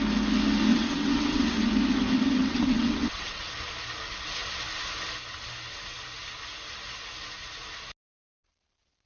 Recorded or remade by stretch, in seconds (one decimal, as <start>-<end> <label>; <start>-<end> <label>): 0.0-0.7 recorded; 0.7-1.7 remade; 1.7-2.4 recorded; 2.4-3.4 remade; 3.4-9.1 recorded